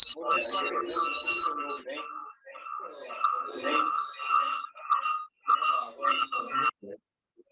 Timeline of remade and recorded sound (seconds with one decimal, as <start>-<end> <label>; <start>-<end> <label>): 0.0-7.5 recorded